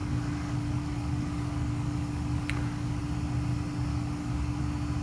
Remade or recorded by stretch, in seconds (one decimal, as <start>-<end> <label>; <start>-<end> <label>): 0.0-3.0 remade; 3.0-3.9 recorded; 3.9-4.6 remade; 4.6-5.0 recorded